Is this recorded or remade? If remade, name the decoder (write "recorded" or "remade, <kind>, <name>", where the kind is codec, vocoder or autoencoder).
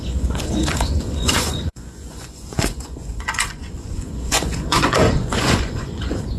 remade, vocoder, Vocos